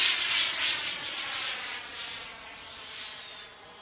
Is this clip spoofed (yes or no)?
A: no